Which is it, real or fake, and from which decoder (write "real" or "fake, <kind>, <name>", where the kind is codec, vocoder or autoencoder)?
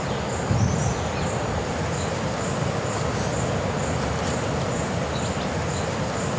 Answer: real